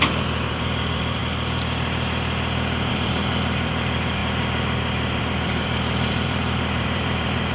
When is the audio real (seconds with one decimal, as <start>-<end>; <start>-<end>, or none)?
1.2-2.9; 4.2-5.2

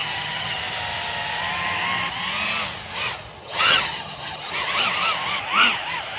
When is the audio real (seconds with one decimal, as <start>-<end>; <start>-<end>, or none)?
0.6-3.4; 4.5-6.2

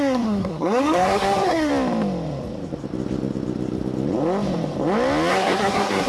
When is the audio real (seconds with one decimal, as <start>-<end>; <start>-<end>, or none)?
1.7-5.3

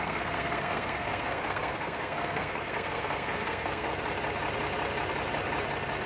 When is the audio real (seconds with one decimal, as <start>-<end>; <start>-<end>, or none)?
3.9-6.1

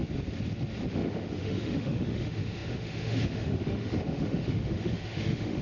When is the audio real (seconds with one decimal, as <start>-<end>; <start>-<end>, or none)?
0.0-0.9

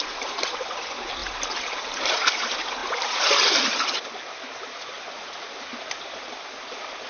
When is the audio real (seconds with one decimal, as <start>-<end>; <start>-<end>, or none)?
0.0-7.1

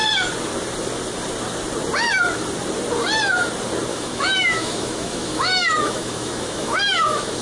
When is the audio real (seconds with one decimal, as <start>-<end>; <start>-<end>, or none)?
0.0-3.9

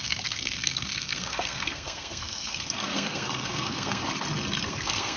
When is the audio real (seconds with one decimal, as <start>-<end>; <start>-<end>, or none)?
4.0-4.7